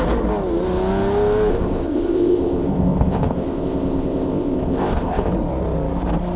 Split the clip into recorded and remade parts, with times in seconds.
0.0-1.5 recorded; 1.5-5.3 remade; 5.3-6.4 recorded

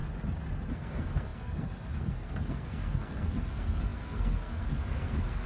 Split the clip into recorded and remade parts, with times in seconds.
0.0-0.7 recorded; 0.7-5.5 remade

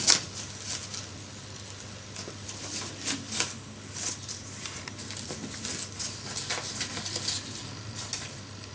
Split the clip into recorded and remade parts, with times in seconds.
0.0-8.7 recorded